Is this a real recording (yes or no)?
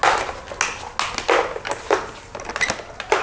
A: yes